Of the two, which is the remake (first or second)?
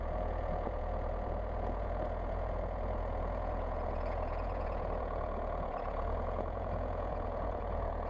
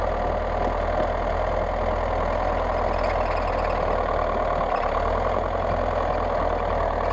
first